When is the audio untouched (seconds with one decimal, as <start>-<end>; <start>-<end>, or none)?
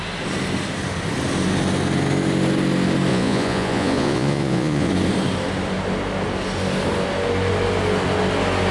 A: 0.0-3.1; 4.9-8.7